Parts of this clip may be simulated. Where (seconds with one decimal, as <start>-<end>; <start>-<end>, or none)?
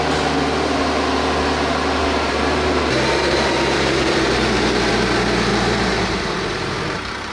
2.0-4.9; 5.5-7.3